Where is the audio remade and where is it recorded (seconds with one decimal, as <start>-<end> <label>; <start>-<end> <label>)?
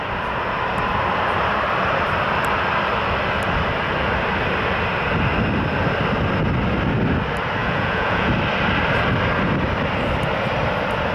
0.0-7.6 recorded; 7.6-8.3 remade; 8.3-11.1 recorded